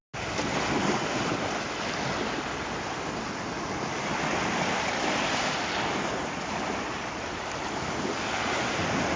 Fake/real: real